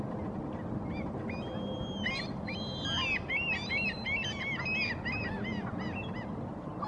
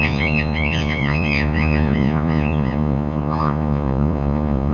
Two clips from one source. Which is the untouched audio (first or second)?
first